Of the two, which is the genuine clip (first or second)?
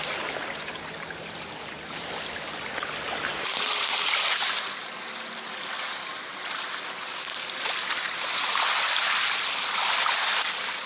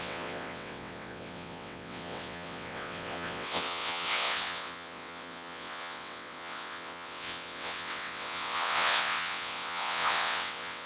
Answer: first